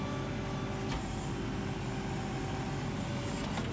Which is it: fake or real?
real